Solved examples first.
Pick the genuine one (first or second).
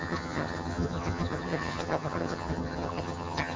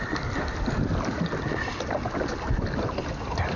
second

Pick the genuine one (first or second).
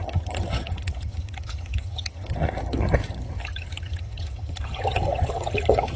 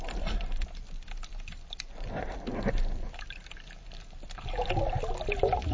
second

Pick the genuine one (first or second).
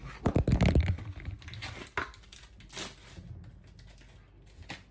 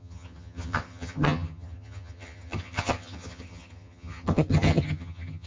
first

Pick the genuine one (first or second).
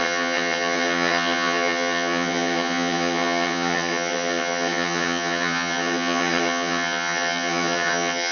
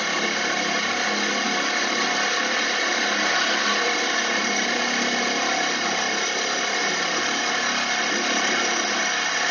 second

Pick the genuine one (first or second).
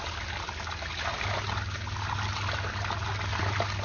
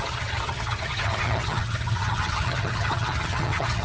first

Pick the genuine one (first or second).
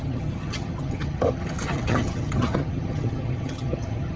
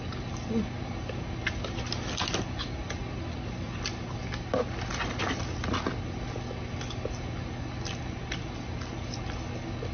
second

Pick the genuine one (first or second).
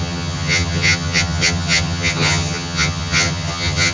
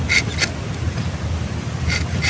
second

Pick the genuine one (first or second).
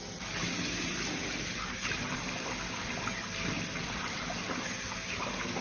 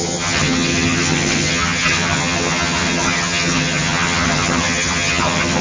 first